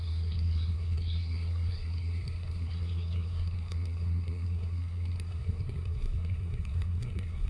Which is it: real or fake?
fake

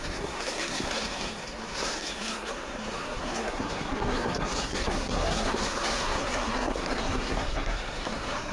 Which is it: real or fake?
fake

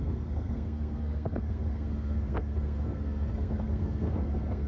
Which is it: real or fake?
fake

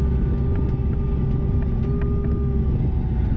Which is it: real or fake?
real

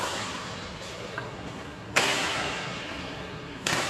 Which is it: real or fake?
fake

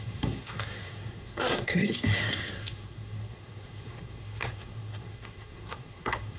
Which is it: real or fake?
fake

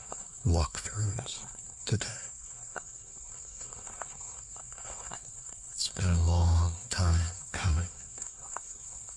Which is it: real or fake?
fake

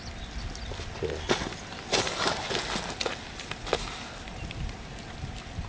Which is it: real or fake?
real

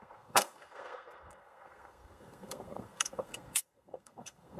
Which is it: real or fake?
fake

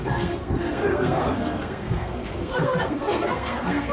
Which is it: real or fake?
fake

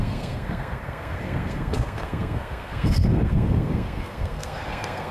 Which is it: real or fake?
fake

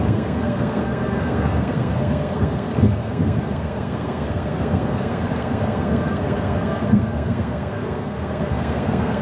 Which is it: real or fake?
fake